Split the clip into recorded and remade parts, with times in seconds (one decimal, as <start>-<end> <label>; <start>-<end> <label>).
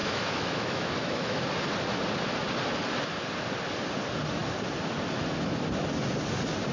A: 0.0-1.4 remade; 1.4-6.7 recorded